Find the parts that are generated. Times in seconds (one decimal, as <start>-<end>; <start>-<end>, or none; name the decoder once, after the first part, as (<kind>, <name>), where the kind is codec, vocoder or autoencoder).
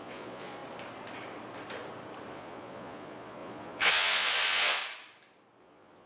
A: 0.0-0.6 (vocoder, Vocos); 2.3-4.8; 5.6-6.1